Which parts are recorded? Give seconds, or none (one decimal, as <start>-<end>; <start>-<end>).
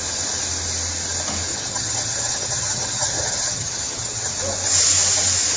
0.0-1.5; 4.3-5.6